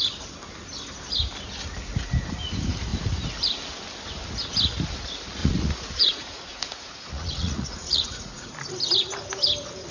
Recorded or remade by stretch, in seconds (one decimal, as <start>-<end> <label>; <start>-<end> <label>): 0.0-5.4 recorded; 5.4-8.5 remade; 8.5-9.9 recorded